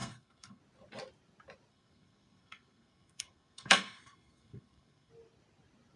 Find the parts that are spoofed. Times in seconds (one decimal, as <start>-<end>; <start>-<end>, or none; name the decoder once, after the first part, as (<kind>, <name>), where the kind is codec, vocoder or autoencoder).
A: 0.0-0.6 (codec, SNAC); 1.7-5.1